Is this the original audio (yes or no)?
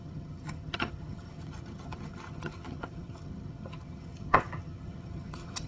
no